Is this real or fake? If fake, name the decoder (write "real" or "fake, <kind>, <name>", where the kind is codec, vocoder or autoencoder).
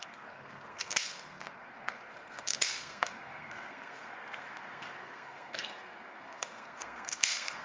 fake, codec, SNAC